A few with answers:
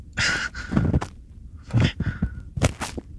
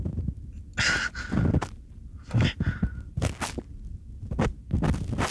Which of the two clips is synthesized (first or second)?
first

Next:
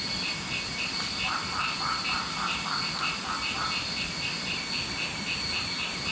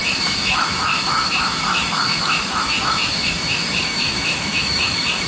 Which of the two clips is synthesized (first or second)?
second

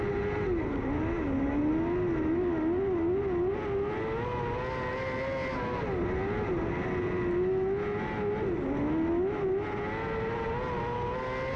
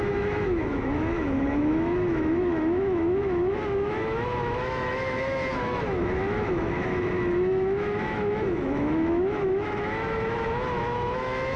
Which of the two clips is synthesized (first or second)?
second